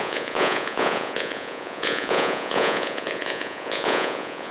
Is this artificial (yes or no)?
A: yes